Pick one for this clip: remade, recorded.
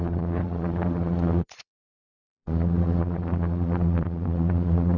remade